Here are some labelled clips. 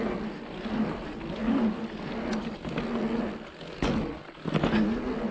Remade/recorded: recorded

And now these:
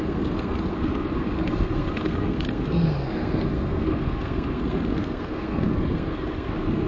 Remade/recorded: remade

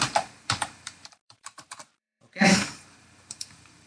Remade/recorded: remade